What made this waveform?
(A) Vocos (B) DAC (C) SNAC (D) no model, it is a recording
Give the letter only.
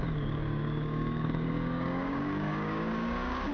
B